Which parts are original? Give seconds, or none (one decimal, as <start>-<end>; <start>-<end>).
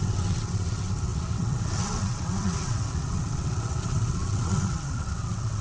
none